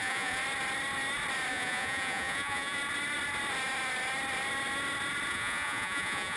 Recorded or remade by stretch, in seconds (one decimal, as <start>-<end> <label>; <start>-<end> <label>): 0.0-0.4 remade; 0.4-1.5 recorded; 1.5-2.8 remade; 2.8-5.3 recorded; 5.3-6.4 remade